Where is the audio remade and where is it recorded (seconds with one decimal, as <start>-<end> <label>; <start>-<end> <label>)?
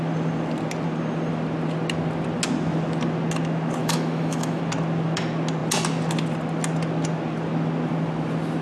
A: 0.0-3.8 recorded; 3.8-4.6 remade; 4.6-8.6 recorded